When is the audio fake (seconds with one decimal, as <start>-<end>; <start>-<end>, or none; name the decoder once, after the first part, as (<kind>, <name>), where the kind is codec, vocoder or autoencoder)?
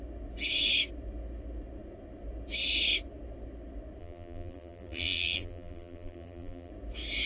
4.0-6.7 (vocoder, BigVGAN v2)